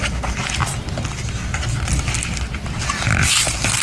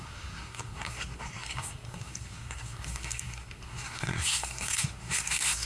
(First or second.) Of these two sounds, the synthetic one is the second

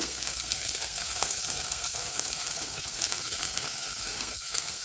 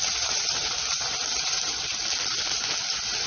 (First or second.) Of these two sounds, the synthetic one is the first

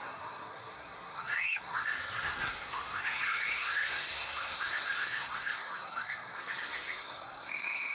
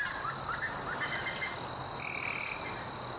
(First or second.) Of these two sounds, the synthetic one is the first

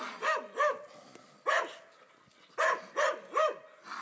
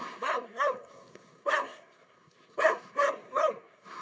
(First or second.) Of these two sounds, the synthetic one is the second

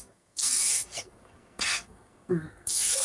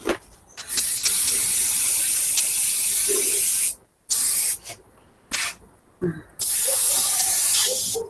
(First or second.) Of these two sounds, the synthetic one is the first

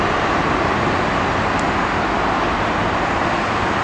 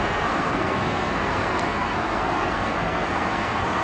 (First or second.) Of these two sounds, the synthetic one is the second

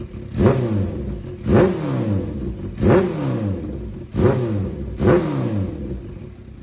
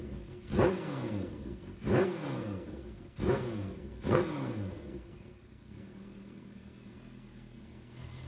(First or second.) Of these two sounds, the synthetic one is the second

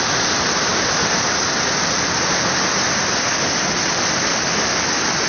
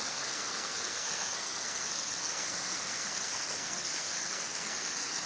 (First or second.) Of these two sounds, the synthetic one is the second